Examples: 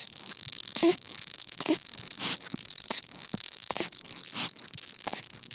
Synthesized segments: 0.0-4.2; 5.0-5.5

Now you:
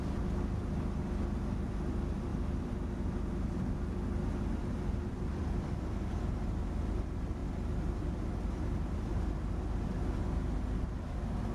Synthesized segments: none

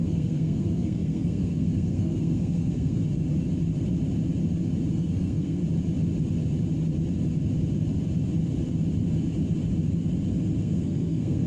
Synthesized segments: 0.0-3.0; 4.9-5.6; 10.6-11.5

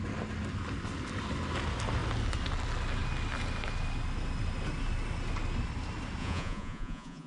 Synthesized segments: 6.2-7.3

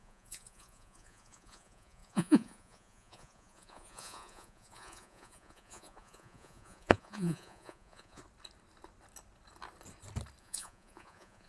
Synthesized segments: 0.0-8.2; 10.4-11.5

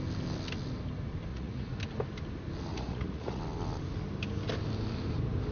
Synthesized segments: 1.3-1.8; 2.7-3.4

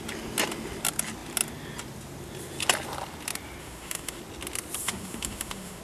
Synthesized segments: 3.6-4.2; 4.8-5.8